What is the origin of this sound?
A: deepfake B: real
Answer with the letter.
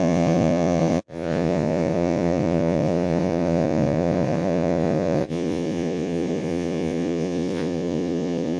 A